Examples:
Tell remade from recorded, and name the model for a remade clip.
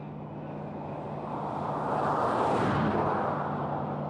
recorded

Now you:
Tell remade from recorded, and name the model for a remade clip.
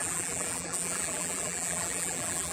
remade, vocoder, BigVGAN v2